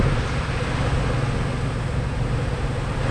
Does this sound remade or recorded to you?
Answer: recorded